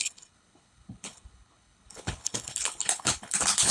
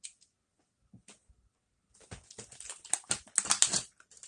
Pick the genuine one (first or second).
second